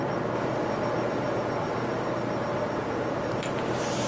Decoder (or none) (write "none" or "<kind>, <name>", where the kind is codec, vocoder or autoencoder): none